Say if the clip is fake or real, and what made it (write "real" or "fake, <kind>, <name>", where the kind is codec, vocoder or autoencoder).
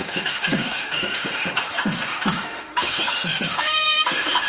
fake, autoencoder, DAC-VAE